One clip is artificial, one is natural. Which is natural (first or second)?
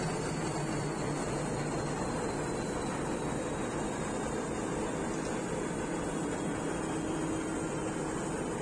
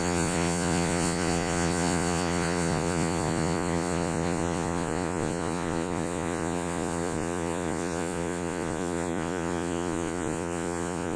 first